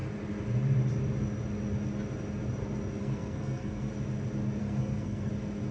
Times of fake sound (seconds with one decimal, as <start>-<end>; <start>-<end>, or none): 3.0-3.9; 4.6-5.3